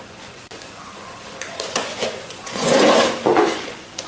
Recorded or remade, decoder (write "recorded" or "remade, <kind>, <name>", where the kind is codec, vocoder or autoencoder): remade, vocoder, Vocos